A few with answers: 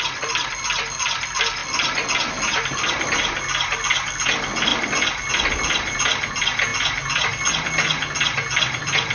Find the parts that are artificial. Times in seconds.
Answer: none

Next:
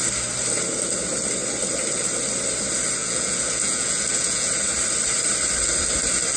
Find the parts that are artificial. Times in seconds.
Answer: 3.0-4.5 (vocoder, Vocos)

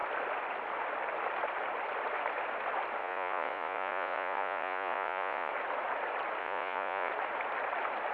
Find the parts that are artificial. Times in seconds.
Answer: 3.0-5.5 (vocoder, Vocos); 6.4-7.1

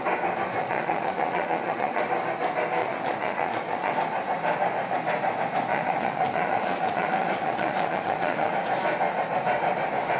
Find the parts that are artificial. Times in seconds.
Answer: 0.6-2.0 (vocoder, Vocos); 2.8-3.9; 5.7-8.5